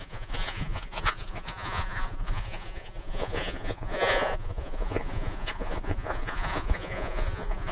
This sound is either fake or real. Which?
fake